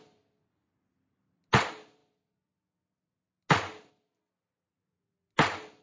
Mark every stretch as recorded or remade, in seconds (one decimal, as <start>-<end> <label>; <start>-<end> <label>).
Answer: 0.0-5.8 recorded

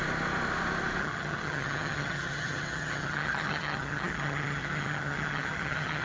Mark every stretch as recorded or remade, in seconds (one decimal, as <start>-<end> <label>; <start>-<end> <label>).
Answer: 0.0-1.0 recorded; 1.0-6.0 remade

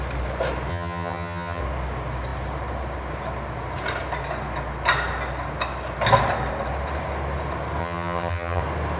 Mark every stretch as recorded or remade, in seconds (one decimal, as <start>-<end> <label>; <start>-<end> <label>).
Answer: 0.0-0.7 recorded; 0.7-1.6 remade; 1.6-7.8 recorded; 7.8-8.6 remade; 8.6-9.0 recorded

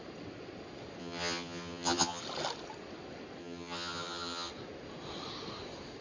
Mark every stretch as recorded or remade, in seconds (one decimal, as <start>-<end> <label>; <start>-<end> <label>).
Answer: 0.0-1.0 recorded; 1.0-2.2 remade; 2.2-3.4 recorded; 3.4-4.5 remade; 4.5-6.0 recorded